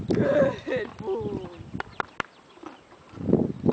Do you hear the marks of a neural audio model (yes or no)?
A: no